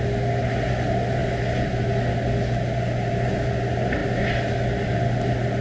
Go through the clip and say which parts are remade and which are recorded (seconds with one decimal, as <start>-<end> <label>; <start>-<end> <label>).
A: 0.0-5.6 recorded